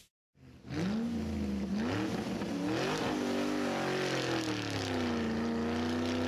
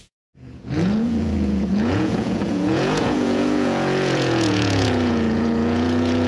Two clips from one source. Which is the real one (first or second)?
first